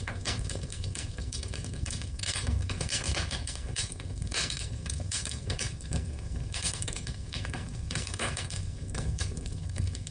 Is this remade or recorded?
remade